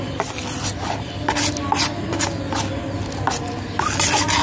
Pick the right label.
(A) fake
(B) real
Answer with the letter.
B